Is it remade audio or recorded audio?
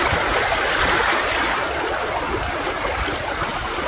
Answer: recorded